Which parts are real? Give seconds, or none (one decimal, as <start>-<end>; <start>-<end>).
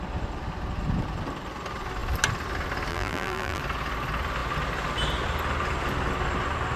0.0-2.9; 3.6-6.8